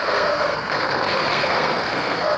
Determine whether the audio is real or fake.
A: fake